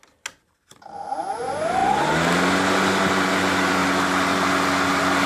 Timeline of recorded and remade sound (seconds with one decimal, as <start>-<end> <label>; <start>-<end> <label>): 0.0-5.3 recorded